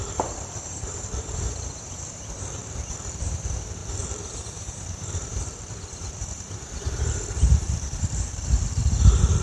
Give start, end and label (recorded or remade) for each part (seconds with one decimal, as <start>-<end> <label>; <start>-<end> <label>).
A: 0.0-9.4 remade